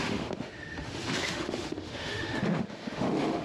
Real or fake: fake